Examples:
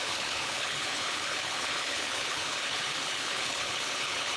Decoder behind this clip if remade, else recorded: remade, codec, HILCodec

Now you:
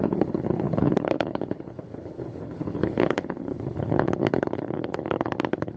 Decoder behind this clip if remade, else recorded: remade, codec, HILCodec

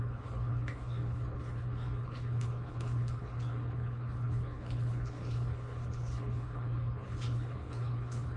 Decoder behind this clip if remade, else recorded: remade, codec, HILCodec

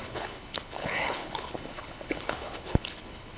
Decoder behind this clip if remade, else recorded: remade, codec, HILCodec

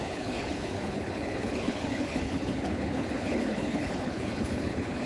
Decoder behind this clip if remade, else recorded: remade, codec, HILCodec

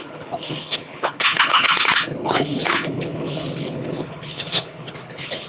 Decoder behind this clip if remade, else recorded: remade, codec, HILCodec